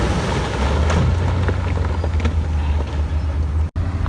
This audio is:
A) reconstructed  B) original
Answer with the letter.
B